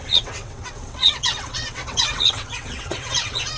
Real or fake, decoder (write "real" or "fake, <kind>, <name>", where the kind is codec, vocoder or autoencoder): fake, vocoder, WaveNeXt